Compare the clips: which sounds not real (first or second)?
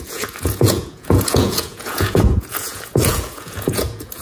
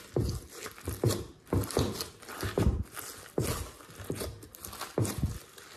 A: first